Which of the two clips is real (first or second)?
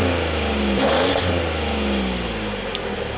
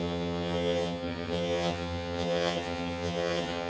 first